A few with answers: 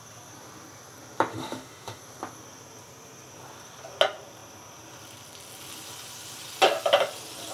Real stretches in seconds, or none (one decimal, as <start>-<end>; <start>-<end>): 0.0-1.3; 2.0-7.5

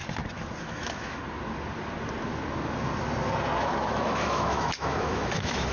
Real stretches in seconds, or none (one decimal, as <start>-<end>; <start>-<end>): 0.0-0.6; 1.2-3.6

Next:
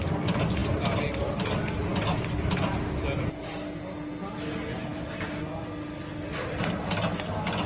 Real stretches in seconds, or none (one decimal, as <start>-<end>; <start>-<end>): 0.0-7.7

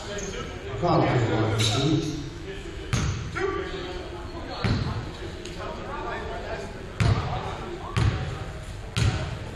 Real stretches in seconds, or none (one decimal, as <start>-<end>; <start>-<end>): 0.0-2.0; 3.0-9.6